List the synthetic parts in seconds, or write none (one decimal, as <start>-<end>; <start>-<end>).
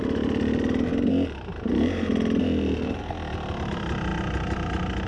0.0-3.1